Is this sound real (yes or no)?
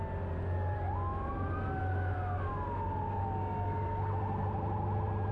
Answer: yes